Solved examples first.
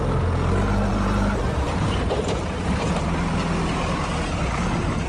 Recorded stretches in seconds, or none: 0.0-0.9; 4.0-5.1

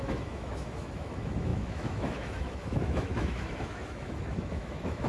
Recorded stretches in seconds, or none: none

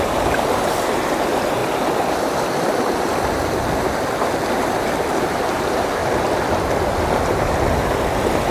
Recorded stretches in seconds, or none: 1.6-4.7; 6.0-8.5

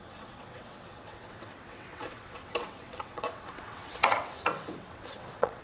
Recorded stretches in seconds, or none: none

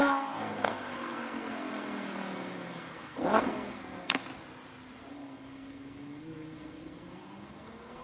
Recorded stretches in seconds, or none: 4.3-5.1

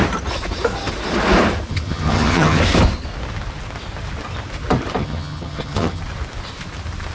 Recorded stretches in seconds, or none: 0.0-1.7; 2.6-5.0; 6.0-7.1